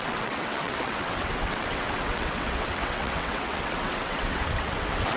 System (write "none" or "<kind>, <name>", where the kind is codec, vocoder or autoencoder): vocoder, WaveNeXt